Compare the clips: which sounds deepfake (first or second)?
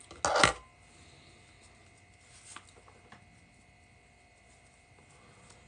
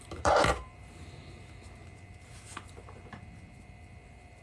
second